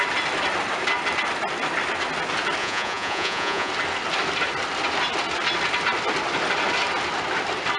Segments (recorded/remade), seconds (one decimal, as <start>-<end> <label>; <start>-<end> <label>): 0.0-2.6 recorded; 2.6-3.7 remade; 3.7-7.8 recorded